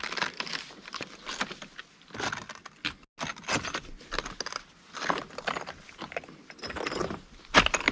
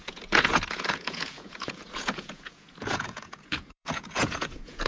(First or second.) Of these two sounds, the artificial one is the second